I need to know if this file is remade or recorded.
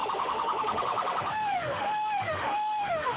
remade